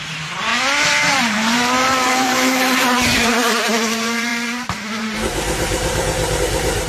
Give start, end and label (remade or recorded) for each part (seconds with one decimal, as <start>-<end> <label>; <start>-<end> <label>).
0.0-0.5 remade; 0.5-1.1 recorded; 1.1-6.9 remade

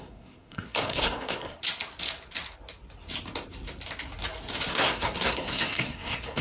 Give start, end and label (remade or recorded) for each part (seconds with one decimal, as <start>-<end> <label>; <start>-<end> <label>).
0.0-1.6 remade; 1.6-4.7 recorded; 4.7-6.4 remade

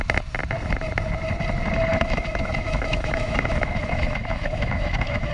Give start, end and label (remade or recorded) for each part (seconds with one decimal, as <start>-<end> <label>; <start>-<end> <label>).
0.0-1.9 recorded; 1.9-5.3 remade

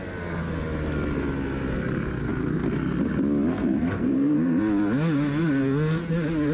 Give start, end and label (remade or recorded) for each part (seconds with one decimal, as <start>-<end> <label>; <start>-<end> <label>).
0.0-3.5 recorded; 3.5-4.6 remade; 4.6-6.5 recorded